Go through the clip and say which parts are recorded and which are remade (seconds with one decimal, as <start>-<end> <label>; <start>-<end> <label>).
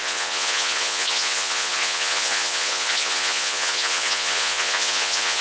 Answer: 0.0-5.4 remade